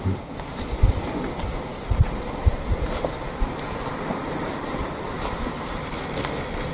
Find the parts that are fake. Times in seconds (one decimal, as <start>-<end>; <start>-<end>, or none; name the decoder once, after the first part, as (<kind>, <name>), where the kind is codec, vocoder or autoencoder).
none